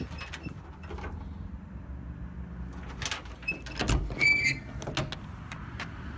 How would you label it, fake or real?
real